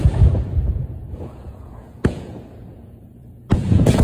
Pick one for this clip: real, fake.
fake